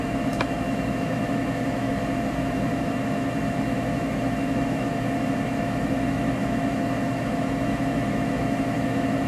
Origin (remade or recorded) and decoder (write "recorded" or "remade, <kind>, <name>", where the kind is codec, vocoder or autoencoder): remade, autoencoder, DAC-VAE